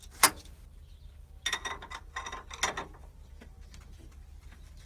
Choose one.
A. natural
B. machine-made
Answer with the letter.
A